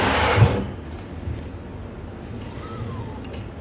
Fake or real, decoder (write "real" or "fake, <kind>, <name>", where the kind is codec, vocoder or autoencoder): real